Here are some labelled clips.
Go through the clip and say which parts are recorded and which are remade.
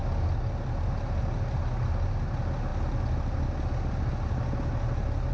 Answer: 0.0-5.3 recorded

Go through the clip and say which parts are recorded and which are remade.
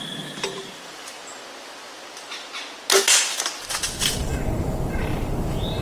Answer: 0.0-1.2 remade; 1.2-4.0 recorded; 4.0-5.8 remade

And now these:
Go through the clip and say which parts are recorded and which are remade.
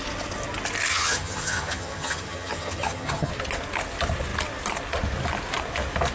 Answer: 0.0-0.9 recorded; 0.9-3.3 remade; 3.3-6.1 recorded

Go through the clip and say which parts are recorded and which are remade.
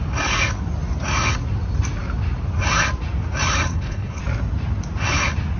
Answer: 0.0-3.7 recorded; 3.7-4.2 remade; 4.2-5.6 recorded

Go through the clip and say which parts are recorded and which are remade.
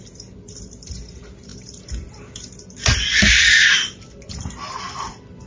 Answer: 0.0-5.5 remade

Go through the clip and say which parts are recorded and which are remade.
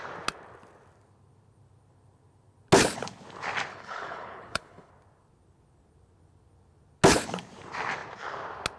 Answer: 0.0-3.7 recorded; 3.7-4.9 remade; 4.9-8.8 recorded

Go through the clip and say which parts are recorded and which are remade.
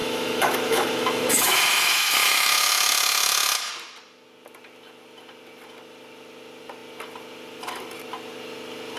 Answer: 0.0-3.7 remade; 3.7-9.0 recorded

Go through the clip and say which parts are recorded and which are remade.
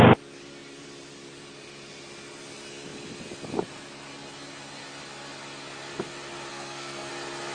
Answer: 0.0-6.5 recorded; 6.5-7.1 remade; 7.1-7.5 recorded